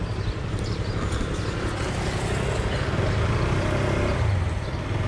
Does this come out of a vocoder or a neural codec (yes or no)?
no